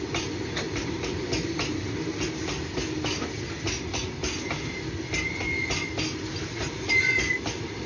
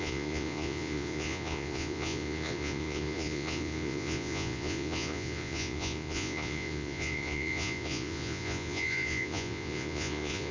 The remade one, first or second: second